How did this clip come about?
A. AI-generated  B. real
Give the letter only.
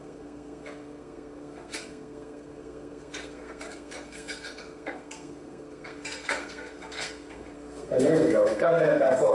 A